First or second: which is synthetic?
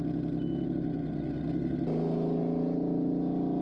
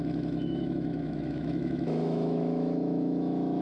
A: second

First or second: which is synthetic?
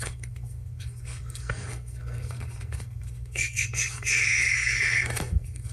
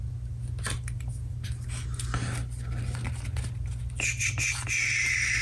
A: first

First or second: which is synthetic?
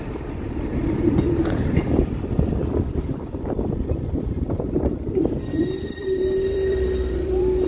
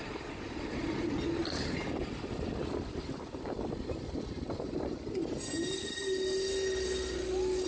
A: first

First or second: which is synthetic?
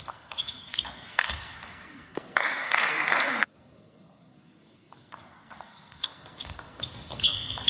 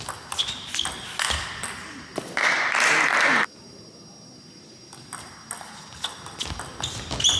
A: first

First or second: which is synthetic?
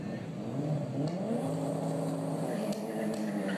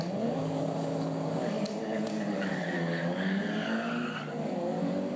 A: second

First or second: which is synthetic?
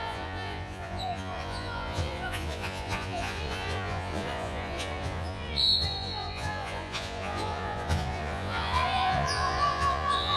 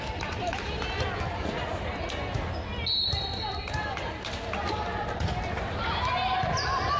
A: first